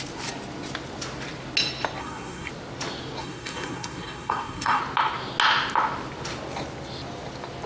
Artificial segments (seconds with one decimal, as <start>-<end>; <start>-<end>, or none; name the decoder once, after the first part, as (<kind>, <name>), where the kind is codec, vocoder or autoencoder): 2.0-2.5 (codec, SNAC); 3.2-4.8